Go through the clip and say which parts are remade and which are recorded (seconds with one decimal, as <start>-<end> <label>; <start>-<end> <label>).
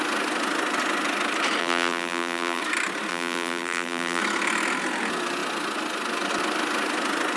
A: 0.0-1.6 recorded; 1.6-2.6 remade; 2.6-3.1 recorded; 3.1-4.2 remade; 4.2-7.4 recorded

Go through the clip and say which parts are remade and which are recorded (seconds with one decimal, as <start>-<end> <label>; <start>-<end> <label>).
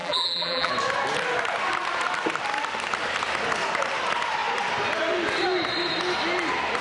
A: 0.0-0.7 remade; 0.7-6.8 recorded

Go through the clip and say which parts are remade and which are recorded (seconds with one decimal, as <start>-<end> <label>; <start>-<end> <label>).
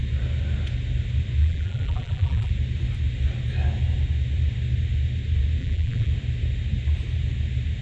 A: 0.0-1.4 recorded; 1.4-2.5 remade; 2.5-5.6 recorded; 5.6-6.1 remade; 6.1-7.8 recorded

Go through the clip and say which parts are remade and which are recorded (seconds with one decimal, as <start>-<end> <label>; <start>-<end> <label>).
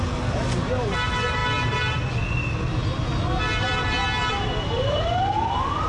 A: 0.0-5.9 recorded